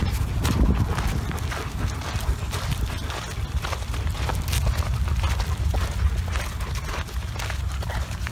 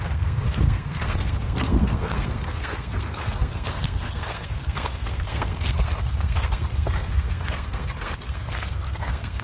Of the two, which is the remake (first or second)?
second